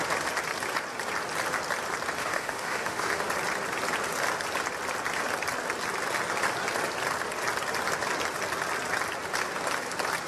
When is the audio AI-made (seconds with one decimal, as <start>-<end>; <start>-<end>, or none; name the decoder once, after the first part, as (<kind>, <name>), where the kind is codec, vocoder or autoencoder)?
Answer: 2.2-3.1 (autoencoder, DAC-VAE)